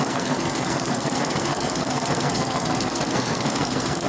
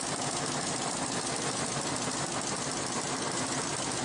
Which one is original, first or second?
second